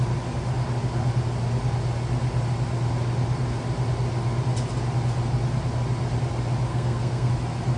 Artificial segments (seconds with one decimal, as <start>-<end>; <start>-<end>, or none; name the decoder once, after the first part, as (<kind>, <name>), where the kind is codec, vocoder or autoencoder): 6.7-7.3 (codec, SNAC)